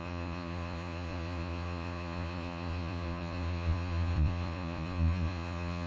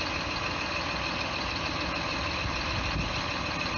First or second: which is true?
second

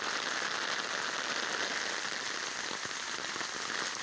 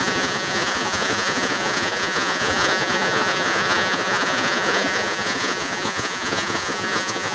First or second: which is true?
first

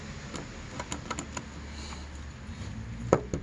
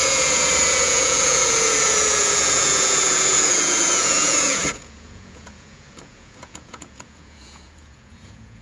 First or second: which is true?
first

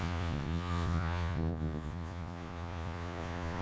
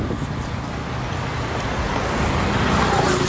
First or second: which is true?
second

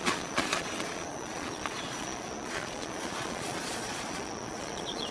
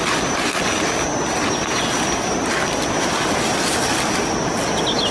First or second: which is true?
second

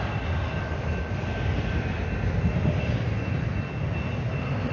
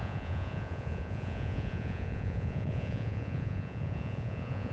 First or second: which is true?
first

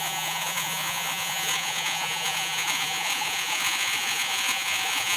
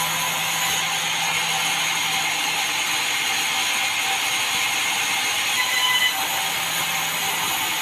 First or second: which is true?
second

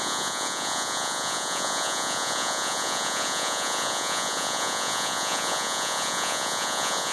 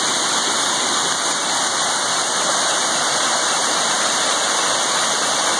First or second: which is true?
second